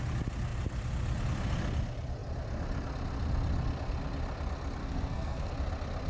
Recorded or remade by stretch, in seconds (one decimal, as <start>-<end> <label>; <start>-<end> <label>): 0.0-4.8 recorded; 4.8-5.5 remade; 5.5-6.1 recorded